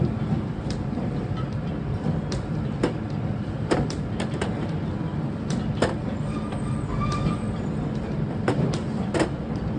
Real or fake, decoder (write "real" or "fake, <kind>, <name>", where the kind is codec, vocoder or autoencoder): fake, vocoder, BigVGAN v2